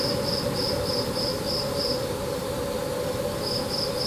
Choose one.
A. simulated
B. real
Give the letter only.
B